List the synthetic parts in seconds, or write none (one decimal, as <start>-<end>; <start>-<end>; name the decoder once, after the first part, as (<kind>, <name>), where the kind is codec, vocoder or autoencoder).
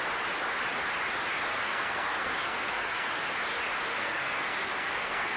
1.5-3.2 (codec, SNAC); 3.9-5.4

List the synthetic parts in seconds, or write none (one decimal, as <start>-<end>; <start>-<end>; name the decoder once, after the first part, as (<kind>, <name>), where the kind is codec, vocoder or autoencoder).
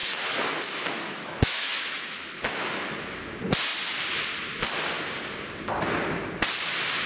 0.0-3.0 (autoencoder, DAC-VAE)